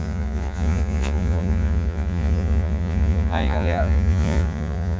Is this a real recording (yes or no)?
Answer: no